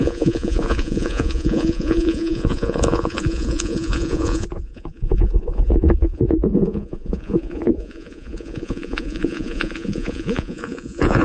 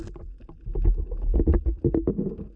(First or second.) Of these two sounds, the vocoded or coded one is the first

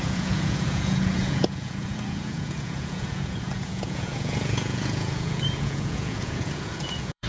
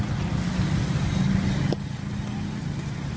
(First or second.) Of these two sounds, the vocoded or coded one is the first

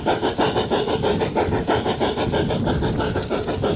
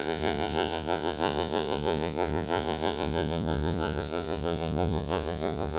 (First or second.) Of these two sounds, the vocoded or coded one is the second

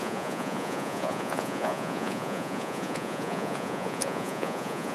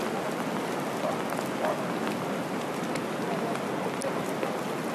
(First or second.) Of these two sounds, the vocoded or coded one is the first